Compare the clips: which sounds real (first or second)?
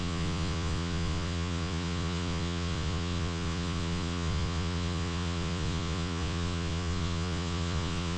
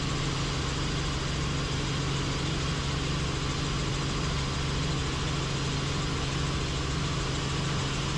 second